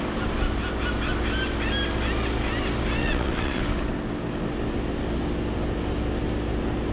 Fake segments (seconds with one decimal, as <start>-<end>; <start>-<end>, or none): 3.0-3.6